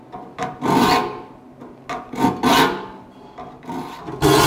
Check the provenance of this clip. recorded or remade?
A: recorded